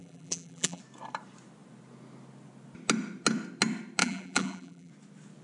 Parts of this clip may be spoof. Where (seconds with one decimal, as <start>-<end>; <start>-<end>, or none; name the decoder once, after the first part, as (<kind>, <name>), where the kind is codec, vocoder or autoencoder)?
0.0-0.8 (vocoder, BigVGAN v2); 4.0-4.9